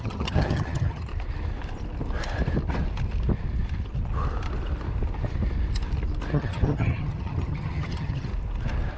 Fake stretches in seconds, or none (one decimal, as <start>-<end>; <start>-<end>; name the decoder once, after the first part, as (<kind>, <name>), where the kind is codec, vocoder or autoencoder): 0.0-1.1 (vocoder, HiFi-GAN); 6.3-8.3